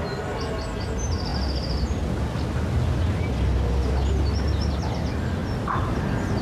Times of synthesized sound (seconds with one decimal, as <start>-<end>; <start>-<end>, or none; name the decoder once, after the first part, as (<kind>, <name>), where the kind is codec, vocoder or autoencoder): none